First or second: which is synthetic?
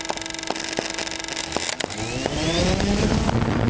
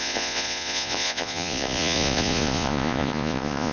second